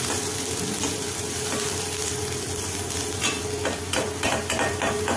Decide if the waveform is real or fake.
fake